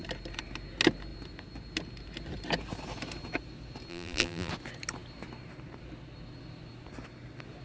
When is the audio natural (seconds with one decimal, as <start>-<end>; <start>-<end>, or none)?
0.0-3.9; 4.5-7.6